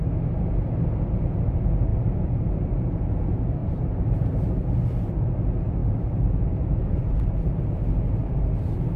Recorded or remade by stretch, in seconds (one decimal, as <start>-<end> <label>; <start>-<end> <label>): 0.0-1.9 recorded; 1.9-2.9 remade; 2.9-3.6 recorded; 3.6-4.7 remade; 4.7-5.8 recorded; 5.8-7.5 remade; 7.5-9.0 recorded